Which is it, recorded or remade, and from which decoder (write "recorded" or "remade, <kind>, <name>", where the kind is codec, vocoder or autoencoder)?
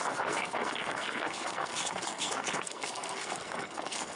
remade, codec, SNAC